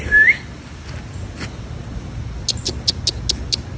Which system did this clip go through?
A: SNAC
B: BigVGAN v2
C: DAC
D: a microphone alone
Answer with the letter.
D